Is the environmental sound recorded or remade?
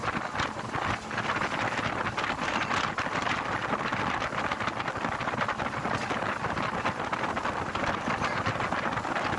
recorded